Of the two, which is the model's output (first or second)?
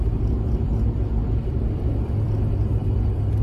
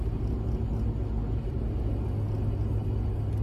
first